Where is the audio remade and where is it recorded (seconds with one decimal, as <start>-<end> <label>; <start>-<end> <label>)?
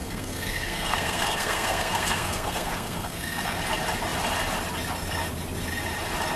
0.0-3.6 remade; 3.6-6.4 recorded